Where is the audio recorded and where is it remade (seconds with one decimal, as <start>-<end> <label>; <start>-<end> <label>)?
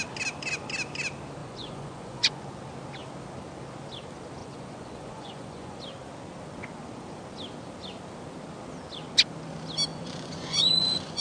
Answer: 0.0-1.4 recorded; 1.4-2.4 remade; 2.4-4.4 recorded; 4.4-5.8 remade; 5.8-9.9 recorded; 9.9-11.2 remade